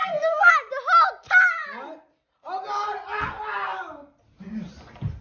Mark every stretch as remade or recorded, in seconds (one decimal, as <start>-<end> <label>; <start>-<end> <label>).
0.0-0.5 remade; 0.5-5.2 recorded